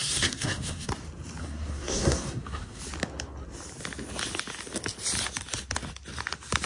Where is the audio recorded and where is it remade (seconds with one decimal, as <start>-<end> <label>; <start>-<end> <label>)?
0.0-0.9 remade; 0.9-1.4 recorded; 1.4-2.8 remade; 2.8-6.7 recorded